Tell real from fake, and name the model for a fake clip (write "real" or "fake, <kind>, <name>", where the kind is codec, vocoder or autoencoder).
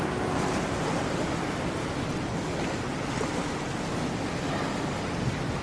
real